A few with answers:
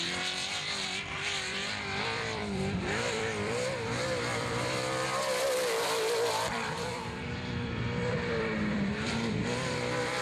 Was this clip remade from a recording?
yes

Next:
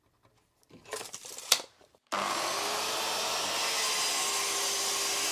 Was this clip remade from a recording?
no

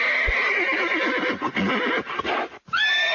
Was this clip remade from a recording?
no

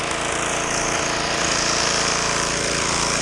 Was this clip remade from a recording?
yes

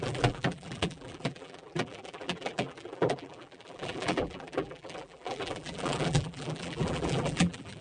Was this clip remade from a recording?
yes